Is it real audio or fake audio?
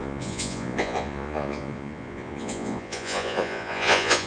fake